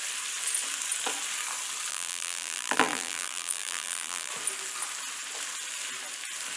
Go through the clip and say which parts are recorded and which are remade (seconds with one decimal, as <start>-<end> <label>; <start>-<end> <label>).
0.0-1.9 recorded; 1.9-4.3 remade; 4.3-6.6 recorded